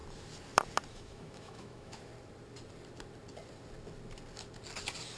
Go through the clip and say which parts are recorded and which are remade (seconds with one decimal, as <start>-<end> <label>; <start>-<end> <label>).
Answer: 0.0-0.9 recorded; 0.9-2.1 remade; 2.1-5.2 recorded